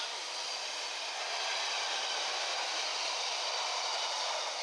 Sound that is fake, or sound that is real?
real